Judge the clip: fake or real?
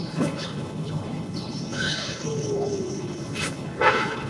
fake